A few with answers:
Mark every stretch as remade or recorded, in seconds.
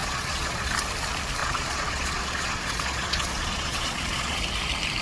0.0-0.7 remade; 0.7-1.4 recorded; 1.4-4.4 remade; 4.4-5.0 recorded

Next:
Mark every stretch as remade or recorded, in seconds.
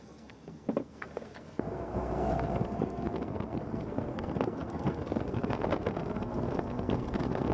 0.0-7.5 remade